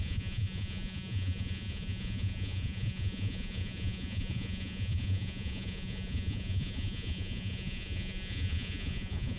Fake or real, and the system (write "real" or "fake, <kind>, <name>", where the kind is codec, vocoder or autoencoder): fake, vocoder, Vocos